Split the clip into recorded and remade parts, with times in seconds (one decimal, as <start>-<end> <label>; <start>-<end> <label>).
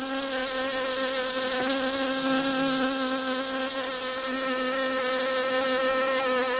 0.0-6.6 recorded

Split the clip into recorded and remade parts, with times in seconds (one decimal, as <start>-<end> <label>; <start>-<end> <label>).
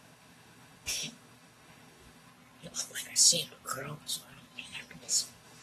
0.0-2.3 remade; 2.3-5.0 recorded; 5.0-5.6 remade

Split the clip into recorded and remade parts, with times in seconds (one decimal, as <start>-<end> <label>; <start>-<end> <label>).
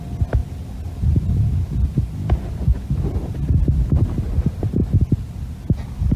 0.0-6.2 recorded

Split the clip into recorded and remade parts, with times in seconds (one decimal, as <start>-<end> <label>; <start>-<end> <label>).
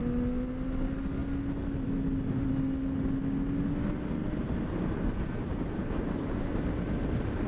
0.0-4.2 recorded; 4.2-7.5 remade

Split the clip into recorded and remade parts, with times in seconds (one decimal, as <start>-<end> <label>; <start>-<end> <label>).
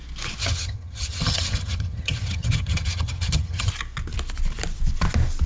0.0-0.4 recorded; 0.4-3.7 remade; 3.7-5.5 recorded